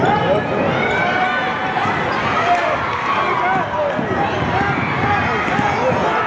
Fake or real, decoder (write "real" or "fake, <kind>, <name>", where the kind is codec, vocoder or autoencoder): real